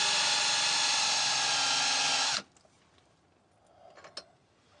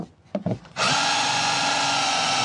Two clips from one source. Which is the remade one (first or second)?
second